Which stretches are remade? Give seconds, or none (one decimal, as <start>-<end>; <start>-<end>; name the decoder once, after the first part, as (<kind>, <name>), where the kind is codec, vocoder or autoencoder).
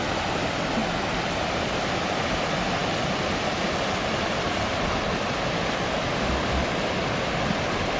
none